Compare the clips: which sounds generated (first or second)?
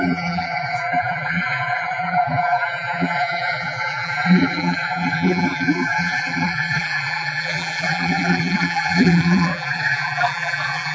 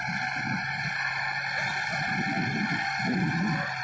first